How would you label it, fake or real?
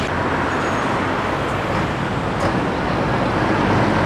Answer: real